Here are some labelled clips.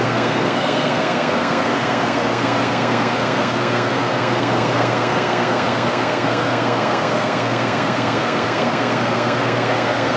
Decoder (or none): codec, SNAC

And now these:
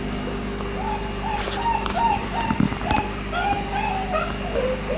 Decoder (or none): none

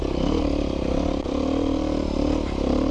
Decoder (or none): none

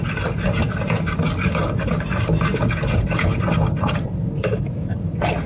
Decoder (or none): none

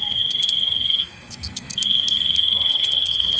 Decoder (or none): codec, SNAC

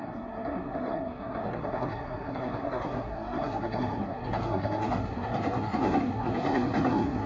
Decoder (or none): codec, SNAC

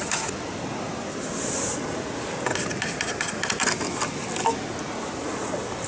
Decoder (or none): none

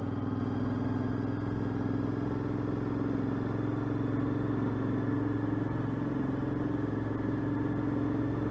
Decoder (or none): none